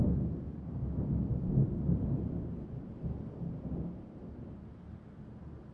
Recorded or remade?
recorded